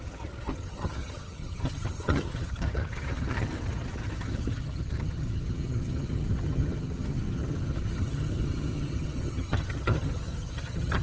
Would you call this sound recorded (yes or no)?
no